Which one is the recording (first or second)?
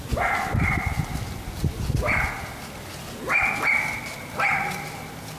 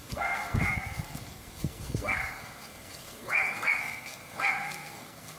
first